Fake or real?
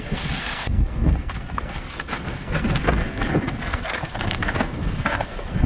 fake